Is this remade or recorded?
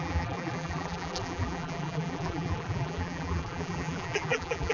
remade